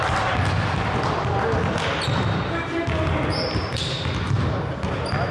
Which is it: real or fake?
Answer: real